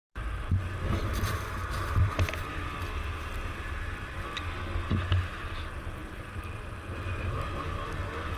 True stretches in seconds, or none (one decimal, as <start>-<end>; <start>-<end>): 0.0-1.8; 2.5-6.0